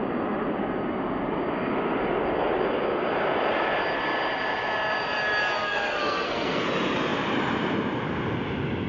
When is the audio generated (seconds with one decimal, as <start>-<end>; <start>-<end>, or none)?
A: 5.6-6.6